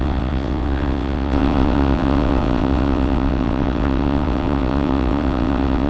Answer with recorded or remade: remade